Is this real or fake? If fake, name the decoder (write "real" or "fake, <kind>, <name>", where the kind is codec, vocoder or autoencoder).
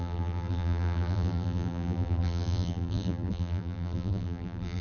fake, vocoder, BigVGAN v2